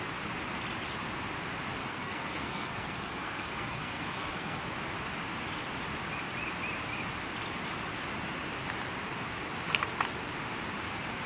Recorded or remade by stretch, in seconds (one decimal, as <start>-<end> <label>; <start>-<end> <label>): 0.0-1.8 recorded; 1.8-4.6 remade; 4.6-11.3 recorded